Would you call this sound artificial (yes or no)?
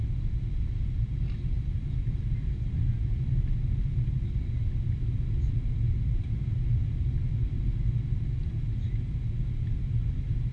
no